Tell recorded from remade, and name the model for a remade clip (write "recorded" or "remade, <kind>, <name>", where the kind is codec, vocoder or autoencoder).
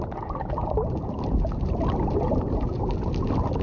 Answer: recorded